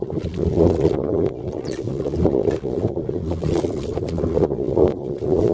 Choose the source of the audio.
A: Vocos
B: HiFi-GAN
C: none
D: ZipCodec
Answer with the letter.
A